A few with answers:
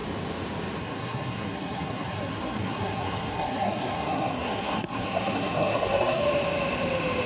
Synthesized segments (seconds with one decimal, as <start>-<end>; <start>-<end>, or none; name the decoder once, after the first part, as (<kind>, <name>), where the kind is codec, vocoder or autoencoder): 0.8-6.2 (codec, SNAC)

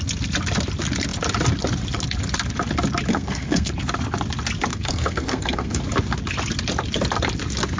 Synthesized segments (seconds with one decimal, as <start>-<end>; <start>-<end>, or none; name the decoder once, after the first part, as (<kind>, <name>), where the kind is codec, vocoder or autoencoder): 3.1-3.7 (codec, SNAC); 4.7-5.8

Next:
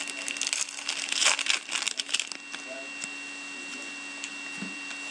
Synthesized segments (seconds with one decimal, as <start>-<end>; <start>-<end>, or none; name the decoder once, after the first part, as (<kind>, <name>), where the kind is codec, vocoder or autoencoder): none

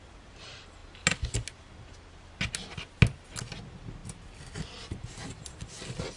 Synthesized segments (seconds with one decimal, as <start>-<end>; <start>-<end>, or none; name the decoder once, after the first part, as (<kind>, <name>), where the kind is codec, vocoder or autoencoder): none

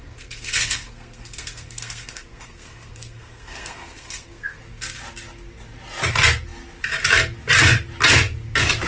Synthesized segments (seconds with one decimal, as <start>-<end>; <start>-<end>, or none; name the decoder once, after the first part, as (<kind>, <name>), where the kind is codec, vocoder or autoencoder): 0.0-4.6 (codec, SNAC)

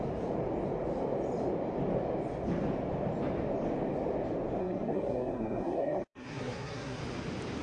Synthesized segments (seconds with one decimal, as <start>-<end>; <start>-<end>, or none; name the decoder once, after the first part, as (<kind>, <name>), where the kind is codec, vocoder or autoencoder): 4.6-7.0 (codec, SNAC)